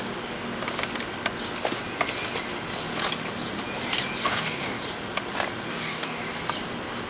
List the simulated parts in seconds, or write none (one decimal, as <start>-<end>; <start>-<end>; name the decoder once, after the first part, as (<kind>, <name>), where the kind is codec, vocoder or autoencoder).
4.3-4.8 (codec, DAC); 5.7-6.2